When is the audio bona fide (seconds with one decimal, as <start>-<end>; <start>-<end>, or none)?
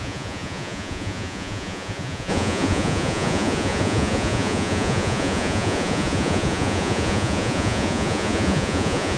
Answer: none